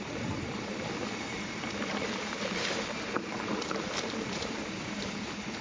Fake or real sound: fake